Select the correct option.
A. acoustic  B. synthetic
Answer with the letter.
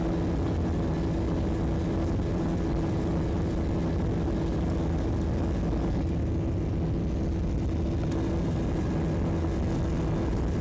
A